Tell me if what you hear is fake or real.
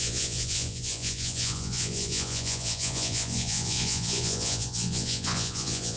fake